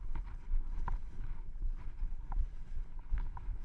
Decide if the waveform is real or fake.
real